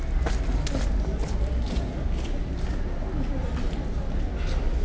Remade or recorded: recorded